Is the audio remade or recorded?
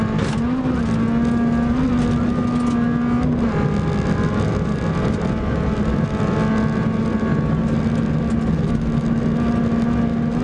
recorded